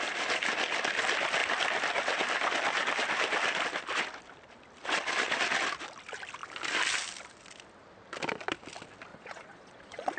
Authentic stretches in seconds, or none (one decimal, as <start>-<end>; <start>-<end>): 0.0-9.1